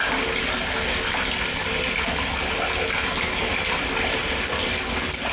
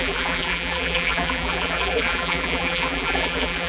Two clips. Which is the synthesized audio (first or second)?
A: second